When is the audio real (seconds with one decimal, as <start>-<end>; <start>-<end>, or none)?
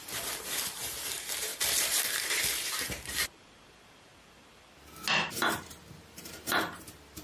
4.1-5.6